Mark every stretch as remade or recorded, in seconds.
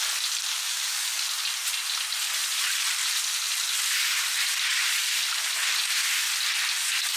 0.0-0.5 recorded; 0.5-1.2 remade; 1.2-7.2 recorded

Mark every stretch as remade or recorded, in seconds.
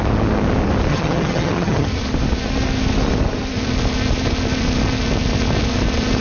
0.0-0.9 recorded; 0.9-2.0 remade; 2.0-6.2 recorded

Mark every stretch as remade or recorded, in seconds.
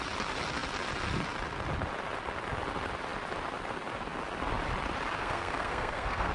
0.0-5.2 recorded; 5.2-6.3 remade